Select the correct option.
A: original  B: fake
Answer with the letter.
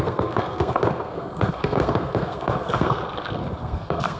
B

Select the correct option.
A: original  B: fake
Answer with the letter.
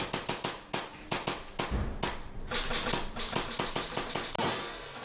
A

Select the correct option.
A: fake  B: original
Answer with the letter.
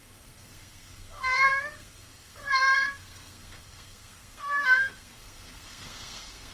A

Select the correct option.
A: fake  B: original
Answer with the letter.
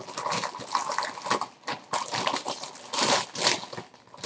B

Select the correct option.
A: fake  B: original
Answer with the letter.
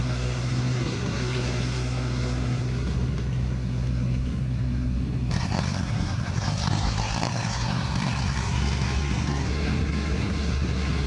A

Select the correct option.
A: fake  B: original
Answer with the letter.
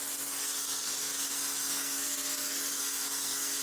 A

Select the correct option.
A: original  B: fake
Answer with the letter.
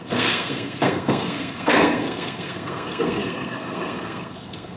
B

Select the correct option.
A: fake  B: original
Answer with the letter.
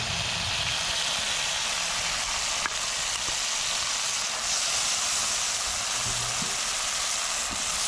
B